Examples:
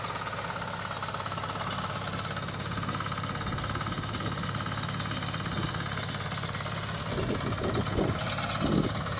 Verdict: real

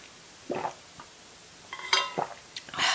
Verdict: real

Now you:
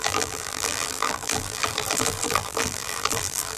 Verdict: fake